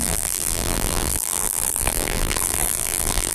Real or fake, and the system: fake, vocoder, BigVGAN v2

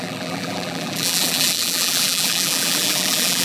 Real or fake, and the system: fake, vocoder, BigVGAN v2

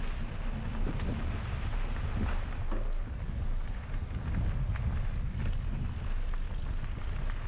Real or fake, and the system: real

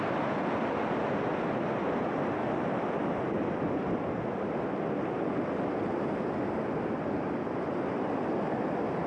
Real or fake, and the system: real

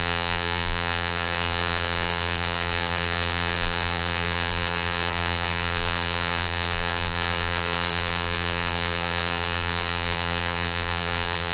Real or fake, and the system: fake, vocoder, BigVGAN v2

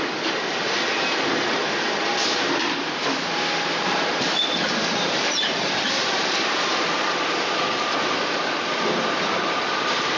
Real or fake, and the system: fake, vocoder, BigVGAN v2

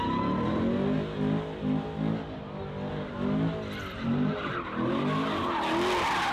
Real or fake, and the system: real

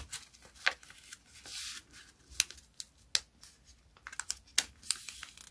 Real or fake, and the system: real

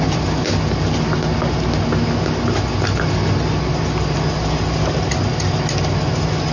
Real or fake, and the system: real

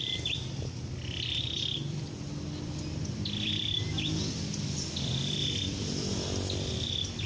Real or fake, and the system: fake, vocoder, BigVGAN v2